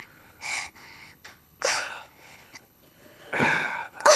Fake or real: fake